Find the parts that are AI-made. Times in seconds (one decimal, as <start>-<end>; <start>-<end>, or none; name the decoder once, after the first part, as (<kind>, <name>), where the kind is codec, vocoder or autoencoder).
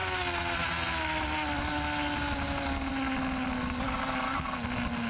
none